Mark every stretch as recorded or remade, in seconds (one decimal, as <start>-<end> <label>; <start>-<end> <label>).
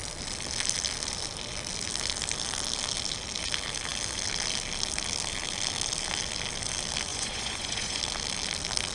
0.0-7.1 recorded; 7.1-8.0 remade; 8.0-8.9 recorded